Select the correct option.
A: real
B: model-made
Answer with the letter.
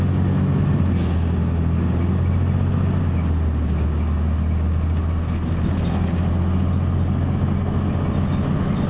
A